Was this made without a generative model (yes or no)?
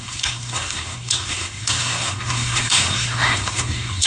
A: no